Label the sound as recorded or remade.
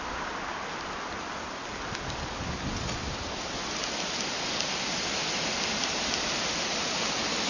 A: recorded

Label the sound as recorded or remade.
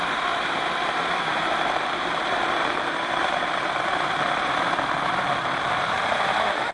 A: remade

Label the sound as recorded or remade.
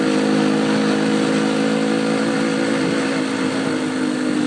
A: recorded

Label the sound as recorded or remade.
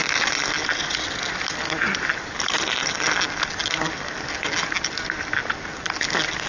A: recorded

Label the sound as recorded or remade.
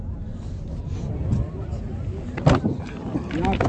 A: recorded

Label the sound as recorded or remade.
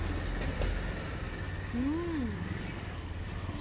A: recorded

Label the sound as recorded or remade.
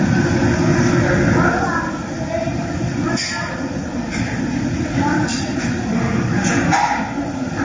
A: recorded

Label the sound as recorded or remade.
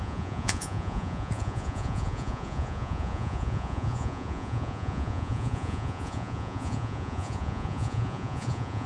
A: remade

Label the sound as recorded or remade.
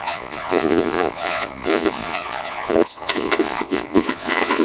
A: remade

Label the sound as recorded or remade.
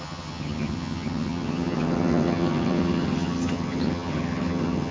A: remade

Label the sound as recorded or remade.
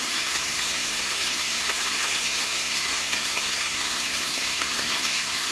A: remade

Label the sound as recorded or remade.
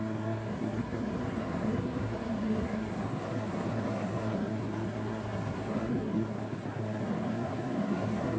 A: remade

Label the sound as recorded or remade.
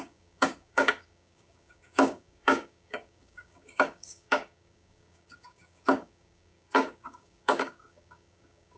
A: remade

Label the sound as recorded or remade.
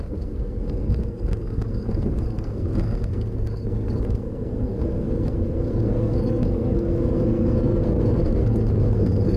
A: remade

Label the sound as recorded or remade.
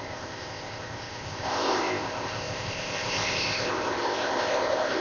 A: remade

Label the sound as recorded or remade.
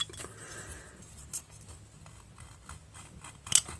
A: recorded